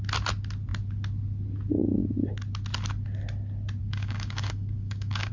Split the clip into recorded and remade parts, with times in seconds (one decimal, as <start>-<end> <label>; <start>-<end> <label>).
0.0-3.8 recorded; 3.8-5.3 remade